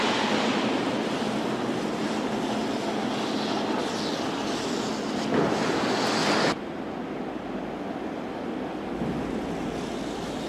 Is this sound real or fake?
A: real